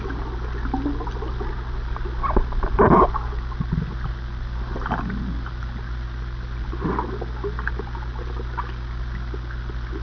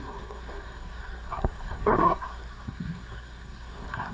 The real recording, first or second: first